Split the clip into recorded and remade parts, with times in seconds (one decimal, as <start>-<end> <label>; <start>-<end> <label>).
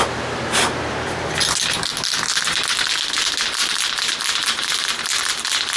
0.0-1.8 remade; 1.8-3.2 recorded; 3.2-5.1 remade; 5.1-5.8 recorded